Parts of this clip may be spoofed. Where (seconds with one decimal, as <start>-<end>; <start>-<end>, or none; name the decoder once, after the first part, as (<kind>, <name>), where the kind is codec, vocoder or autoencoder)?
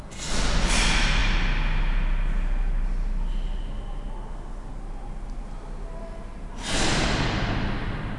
none